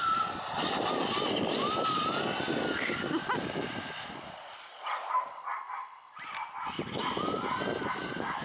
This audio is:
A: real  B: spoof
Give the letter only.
A